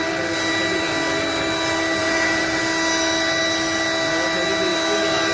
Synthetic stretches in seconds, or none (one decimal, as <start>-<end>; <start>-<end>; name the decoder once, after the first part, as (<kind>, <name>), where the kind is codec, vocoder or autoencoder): 2.0-2.6 (vocoder, Vocos)